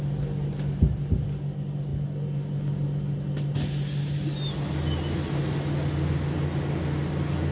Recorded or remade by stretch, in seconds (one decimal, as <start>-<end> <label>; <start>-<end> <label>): 0.0-7.5 recorded